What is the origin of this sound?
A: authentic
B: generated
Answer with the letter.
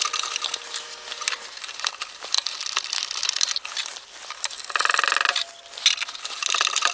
A